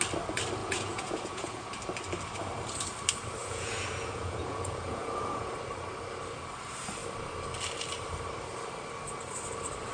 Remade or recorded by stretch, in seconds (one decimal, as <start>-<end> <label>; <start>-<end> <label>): 0.0-0.6 recorded; 0.6-1.7 remade; 1.7-3.4 recorded; 3.4-5.5 remade; 5.5-9.9 recorded